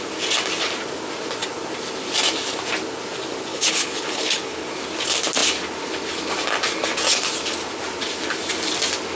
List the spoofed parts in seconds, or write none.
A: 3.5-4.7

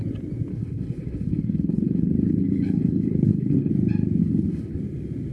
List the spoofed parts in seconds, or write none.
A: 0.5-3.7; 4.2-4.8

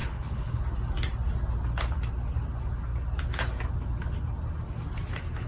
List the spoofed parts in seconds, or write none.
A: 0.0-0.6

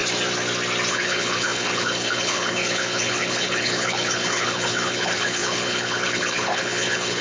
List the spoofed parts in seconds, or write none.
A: 0.9-7.2

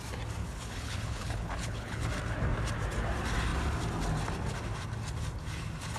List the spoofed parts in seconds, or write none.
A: 0.4-2.1

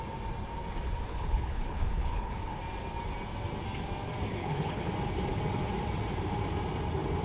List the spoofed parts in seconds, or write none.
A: 1.1-2.6; 4.3-4.9